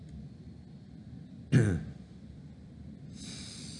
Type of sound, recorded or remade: recorded